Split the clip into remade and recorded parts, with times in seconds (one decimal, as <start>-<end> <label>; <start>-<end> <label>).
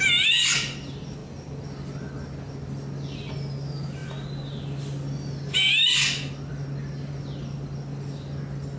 0.0-8.8 recorded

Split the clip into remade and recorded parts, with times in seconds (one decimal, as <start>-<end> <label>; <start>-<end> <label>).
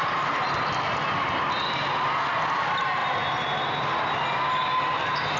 0.0-5.4 recorded